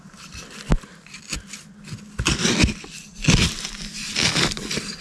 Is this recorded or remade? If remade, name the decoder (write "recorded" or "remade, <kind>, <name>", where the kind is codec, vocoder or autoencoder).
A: recorded